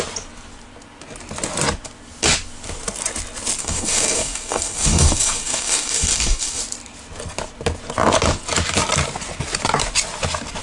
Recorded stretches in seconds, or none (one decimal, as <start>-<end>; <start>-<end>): 0.0-3.6; 6.6-10.6

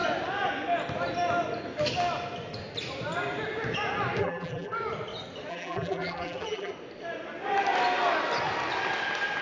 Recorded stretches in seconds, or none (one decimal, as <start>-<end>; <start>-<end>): 0.0-4.2; 4.8-5.5; 6.7-9.4

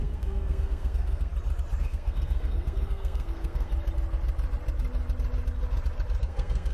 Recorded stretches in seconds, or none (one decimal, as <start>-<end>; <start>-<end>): 1.3-1.8; 3.7-6.2

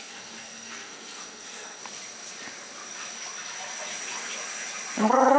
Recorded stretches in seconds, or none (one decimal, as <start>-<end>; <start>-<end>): 1.8-5.0

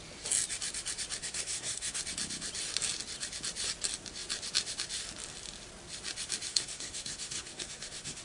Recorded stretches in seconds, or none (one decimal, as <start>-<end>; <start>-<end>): 0.0-1.2; 2.0-6.5

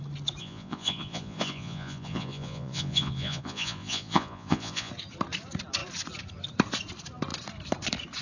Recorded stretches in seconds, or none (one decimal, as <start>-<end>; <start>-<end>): 0.0-0.4; 4.9-8.2

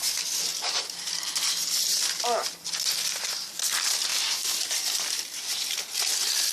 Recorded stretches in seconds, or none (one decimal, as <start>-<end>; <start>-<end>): 0.0-0.5; 2.0-6.5

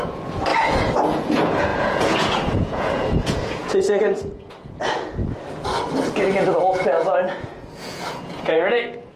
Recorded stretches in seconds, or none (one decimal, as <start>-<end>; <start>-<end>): 0.5-1.1; 5.2-6.6